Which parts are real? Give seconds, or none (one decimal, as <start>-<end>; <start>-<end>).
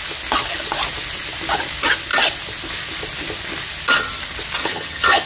0.0-4.6